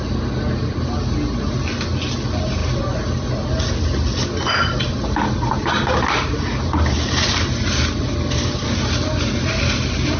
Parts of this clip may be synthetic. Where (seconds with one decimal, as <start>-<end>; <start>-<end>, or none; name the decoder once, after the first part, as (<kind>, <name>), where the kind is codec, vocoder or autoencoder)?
none